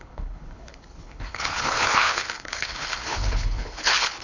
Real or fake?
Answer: fake